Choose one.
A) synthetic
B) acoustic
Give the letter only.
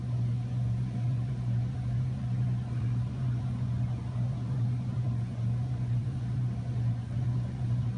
A